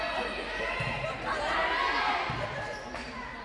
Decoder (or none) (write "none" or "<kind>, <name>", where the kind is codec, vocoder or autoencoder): none